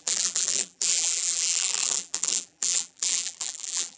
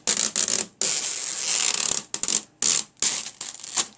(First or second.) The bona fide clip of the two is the second